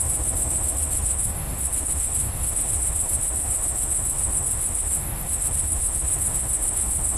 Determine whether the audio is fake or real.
fake